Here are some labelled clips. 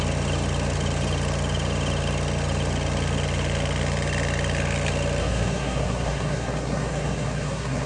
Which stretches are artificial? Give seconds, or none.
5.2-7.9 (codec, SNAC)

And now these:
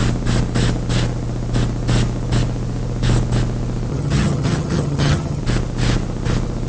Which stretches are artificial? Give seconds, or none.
3.9-5.4 (vocoder, HiFi-GAN)

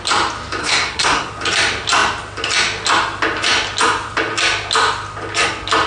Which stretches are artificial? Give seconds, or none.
0.6-1.3 (codec, SNAC)